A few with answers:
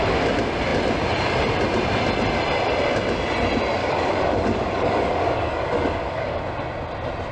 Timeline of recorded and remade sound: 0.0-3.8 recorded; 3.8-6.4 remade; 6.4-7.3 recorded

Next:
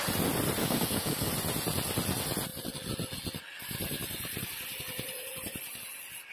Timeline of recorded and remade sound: 0.0-0.6 recorded; 0.6-1.3 remade; 1.3-6.3 recorded